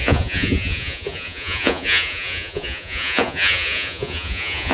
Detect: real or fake fake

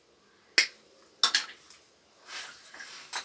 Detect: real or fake real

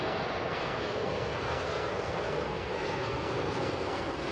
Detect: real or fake fake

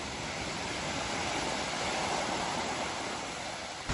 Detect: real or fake real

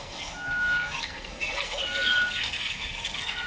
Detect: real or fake fake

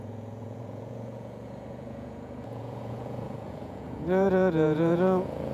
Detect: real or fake fake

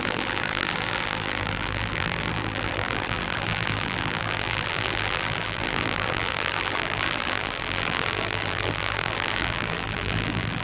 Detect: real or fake fake